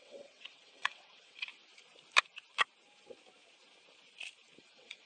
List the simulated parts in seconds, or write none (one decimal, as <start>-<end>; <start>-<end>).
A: 0.0-1.5; 4.6-5.1